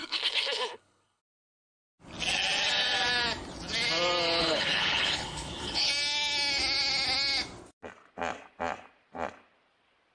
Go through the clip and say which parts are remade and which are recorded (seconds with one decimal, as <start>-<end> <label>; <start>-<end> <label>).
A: 0.0-1.2 remade; 1.2-4.4 recorded; 4.4-5.9 remade; 5.9-10.1 recorded